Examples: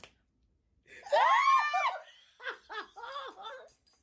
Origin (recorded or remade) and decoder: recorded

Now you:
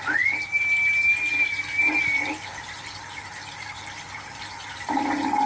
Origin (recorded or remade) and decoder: remade, vocoder, BigVGAN v2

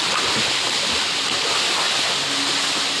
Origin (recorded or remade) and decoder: recorded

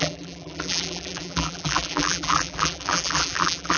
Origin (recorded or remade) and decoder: remade, vocoder, BigVGAN v2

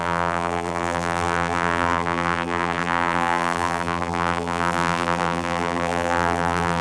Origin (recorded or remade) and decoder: remade, vocoder, BigVGAN v2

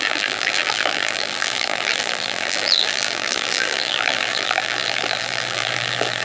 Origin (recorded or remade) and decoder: remade, vocoder, BigVGAN v2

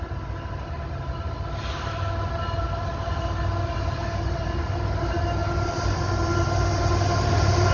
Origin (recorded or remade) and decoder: recorded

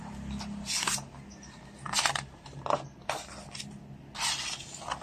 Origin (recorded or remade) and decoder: recorded